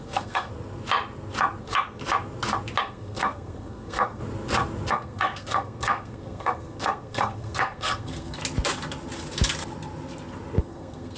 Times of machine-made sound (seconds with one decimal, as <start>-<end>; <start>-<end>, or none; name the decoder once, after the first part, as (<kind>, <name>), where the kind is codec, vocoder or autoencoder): 0.0-0.5 (codec, SNAC); 1.6-2.0; 2.8-4.2; 4.9-8.4; 10.6-11.2